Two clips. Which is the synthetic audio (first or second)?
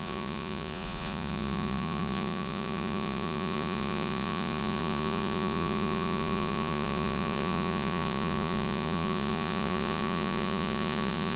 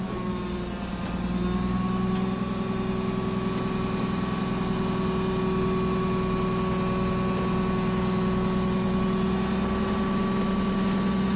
first